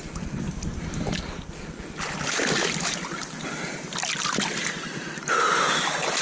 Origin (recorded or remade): recorded